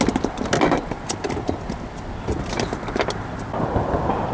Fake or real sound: real